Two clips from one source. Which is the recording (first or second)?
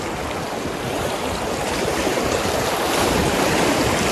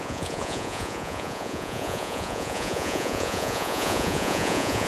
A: first